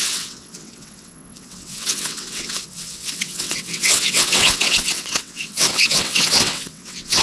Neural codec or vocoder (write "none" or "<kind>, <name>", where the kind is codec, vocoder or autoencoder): vocoder, WaveNeXt